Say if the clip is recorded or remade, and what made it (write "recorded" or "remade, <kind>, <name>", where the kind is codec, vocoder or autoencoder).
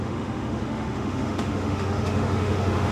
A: remade, autoencoder, DAC-VAE